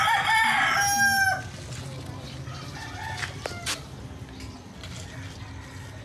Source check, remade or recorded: recorded